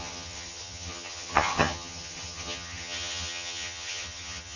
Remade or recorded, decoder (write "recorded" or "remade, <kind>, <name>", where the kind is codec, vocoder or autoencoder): remade, vocoder, HiFi-GAN